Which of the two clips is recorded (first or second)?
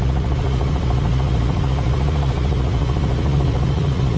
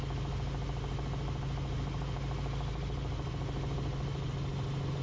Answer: second